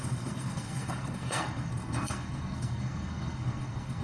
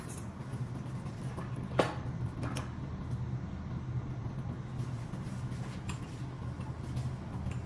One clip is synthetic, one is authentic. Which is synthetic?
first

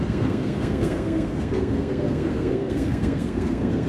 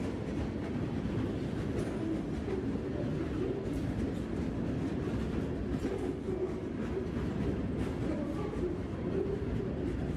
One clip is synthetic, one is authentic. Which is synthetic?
first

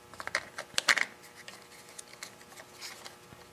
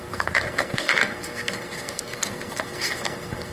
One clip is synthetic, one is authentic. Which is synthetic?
second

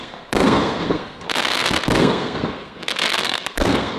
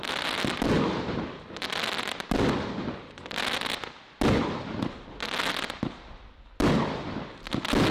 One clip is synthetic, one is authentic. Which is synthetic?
first